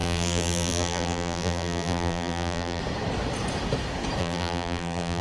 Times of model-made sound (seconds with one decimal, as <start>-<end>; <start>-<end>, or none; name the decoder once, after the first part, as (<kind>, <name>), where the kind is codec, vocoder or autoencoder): 0.0-2.8 (vocoder, BigVGAN v2); 4.2-5.2

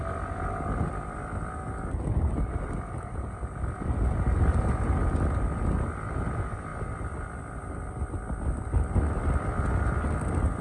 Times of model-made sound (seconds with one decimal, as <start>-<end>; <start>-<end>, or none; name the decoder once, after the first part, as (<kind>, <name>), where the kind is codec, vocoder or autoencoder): none

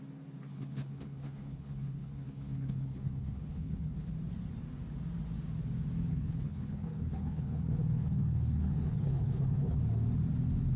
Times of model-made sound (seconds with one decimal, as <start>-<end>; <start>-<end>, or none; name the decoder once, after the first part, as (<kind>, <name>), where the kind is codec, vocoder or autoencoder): 0.5-4.1 (codec, HILCodec); 6.1-9.8

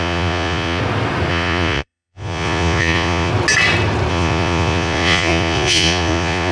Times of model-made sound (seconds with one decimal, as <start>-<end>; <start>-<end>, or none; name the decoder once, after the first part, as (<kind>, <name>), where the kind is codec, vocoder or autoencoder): 0.0-0.8 (vocoder, Vocos); 1.3-3.3; 4.1-6.5

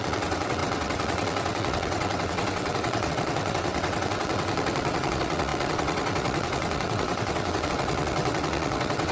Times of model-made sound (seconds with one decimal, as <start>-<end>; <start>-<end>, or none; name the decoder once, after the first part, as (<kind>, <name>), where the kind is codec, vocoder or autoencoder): 0.0-9.1 (vocoder, WaveNeXt)

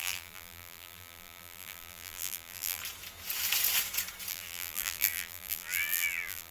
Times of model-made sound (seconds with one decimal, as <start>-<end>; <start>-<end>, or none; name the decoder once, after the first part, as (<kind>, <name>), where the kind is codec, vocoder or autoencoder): 0.0-2.8 (vocoder, BigVGAN v2); 4.3-6.5

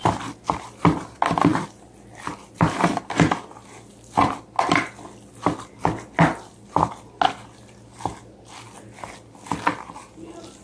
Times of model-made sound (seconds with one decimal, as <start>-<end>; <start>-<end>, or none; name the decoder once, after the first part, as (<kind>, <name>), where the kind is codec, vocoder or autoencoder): none

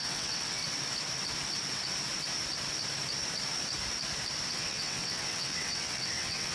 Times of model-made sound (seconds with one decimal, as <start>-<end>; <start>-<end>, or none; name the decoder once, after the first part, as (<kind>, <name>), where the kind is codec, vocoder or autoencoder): 0.0-0.6 (vocoder, WaveNeXt); 4.5-6.5